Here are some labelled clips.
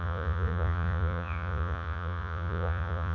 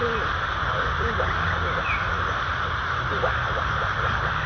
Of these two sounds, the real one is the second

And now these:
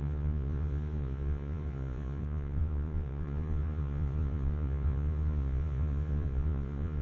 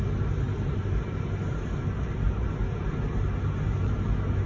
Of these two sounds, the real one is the second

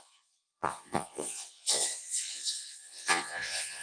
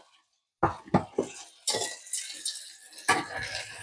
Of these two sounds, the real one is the second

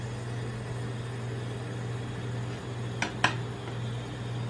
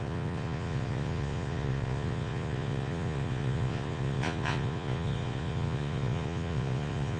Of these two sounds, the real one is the first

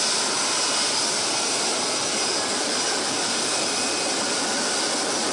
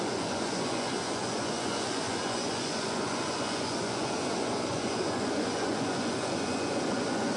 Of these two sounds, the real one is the first